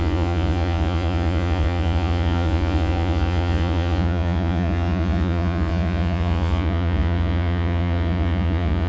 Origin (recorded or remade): remade